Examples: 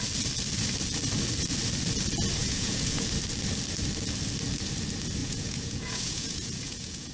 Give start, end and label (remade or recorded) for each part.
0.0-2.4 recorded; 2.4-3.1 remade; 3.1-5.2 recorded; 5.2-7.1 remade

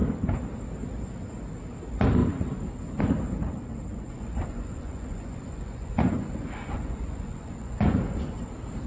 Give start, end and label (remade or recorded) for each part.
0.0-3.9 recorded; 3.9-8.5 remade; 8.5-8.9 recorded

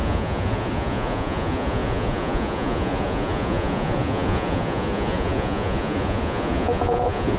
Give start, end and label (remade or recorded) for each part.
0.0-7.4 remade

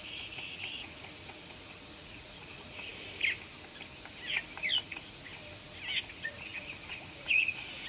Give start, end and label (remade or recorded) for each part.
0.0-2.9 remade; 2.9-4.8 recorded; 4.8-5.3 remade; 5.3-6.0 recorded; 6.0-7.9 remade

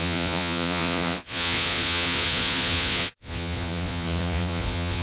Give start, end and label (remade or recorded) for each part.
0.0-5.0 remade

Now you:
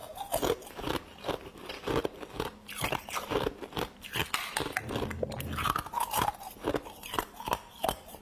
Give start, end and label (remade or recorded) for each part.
0.0-8.2 recorded